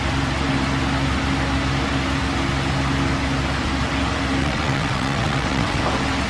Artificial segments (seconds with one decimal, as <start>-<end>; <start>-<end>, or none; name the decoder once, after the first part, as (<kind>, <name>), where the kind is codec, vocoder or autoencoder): 4.4-5.8 (vocoder, WaveNeXt)